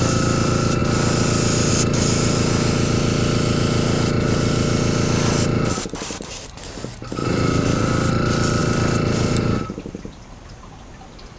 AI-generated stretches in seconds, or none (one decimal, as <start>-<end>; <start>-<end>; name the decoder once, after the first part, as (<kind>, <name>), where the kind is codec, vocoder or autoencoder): 7.2-8.1 (vocoder, BigVGAN v2); 8.6-10.2